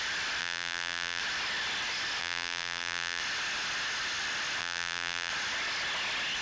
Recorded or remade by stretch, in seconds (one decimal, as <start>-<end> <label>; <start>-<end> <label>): 0.0-0.4 recorded; 0.4-1.2 remade; 1.2-2.2 recorded; 2.2-3.2 remade; 3.2-4.6 recorded; 4.6-5.3 remade; 5.3-6.4 recorded

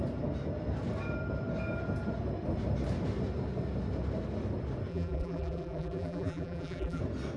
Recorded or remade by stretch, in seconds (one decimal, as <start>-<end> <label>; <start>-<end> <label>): 0.0-4.9 recorded; 4.9-7.0 remade; 7.0-7.4 recorded

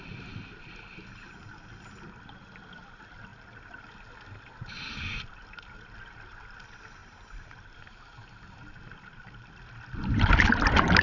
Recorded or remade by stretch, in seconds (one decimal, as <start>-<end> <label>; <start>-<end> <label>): 0.0-7.0 recorded; 7.0-7.7 remade; 7.7-11.0 recorded

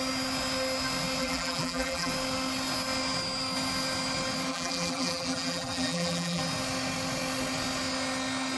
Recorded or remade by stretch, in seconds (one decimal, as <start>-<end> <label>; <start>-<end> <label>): 0.0-1.2 recorded; 1.2-2.1 remade; 2.1-4.5 recorded; 4.5-6.4 remade; 6.4-8.6 recorded